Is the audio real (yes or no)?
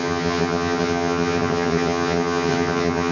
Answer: no